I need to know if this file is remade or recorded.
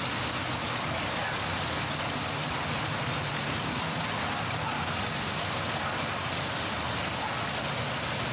recorded